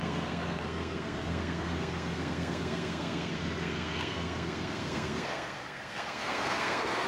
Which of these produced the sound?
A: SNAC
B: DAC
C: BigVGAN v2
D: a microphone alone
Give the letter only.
A